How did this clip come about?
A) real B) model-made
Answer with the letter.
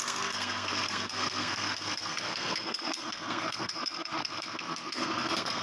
B